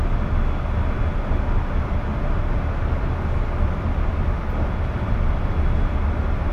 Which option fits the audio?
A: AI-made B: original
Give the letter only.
B